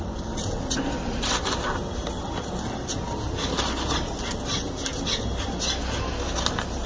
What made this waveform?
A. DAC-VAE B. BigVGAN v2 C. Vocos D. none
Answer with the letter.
D